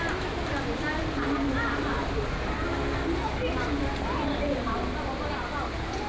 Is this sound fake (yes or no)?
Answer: no